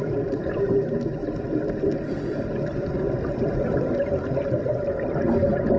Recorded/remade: recorded